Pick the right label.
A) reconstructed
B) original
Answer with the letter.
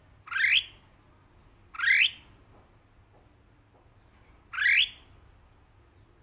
B